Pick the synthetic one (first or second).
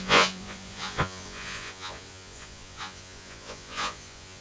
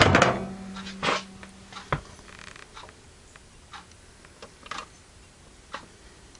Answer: first